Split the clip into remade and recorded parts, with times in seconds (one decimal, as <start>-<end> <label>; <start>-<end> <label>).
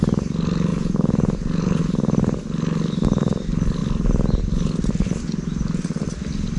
0.0-0.7 recorded; 0.7-1.8 remade; 1.8-6.6 recorded